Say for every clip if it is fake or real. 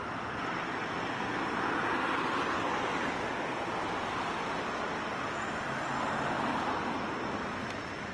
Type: real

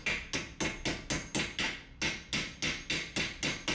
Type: real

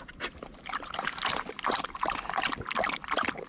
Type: real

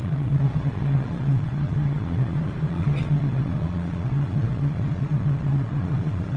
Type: fake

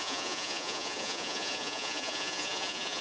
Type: fake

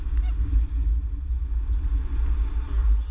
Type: real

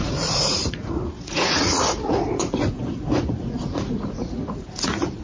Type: fake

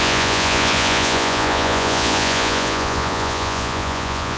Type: fake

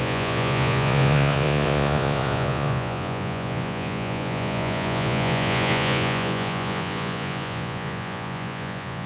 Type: fake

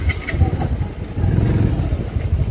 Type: real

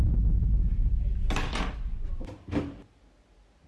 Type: real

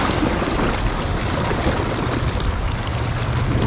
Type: real